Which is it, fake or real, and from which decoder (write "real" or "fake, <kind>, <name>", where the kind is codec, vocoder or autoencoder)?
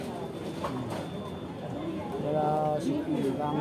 real